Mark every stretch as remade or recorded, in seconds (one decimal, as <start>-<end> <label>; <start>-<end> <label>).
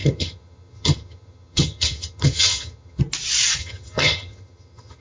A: 0.0-3.0 remade; 3.0-3.6 recorded; 3.6-5.0 remade